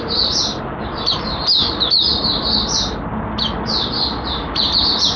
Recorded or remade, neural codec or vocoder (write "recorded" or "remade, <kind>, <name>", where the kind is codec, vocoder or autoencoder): recorded